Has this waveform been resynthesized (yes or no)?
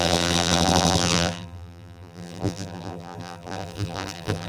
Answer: yes